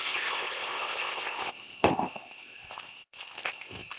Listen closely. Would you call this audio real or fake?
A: fake